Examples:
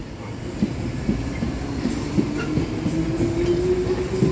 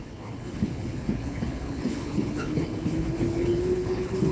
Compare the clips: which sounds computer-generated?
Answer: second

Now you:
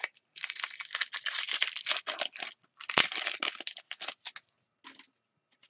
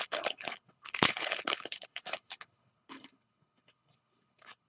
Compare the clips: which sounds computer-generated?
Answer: second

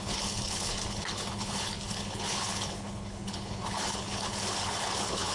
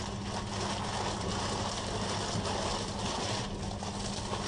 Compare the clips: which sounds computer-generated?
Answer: first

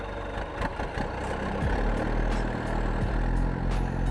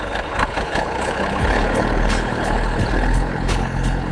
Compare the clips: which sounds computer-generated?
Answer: second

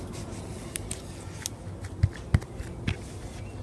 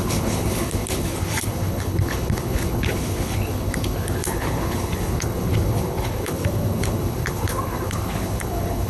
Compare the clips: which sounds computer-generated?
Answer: second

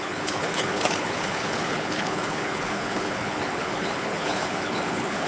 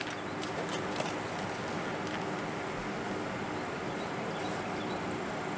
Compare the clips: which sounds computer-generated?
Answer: first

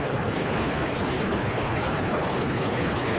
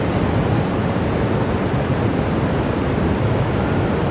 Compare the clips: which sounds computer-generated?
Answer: first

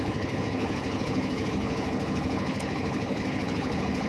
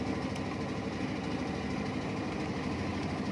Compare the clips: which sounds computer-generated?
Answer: first